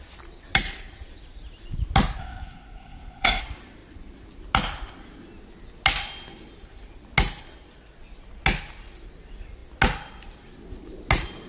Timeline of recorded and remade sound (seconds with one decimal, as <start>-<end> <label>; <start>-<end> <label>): 0.0-2.2 recorded; 2.2-3.4 remade; 3.4-11.5 recorded